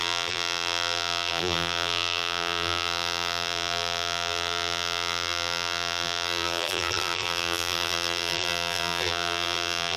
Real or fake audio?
fake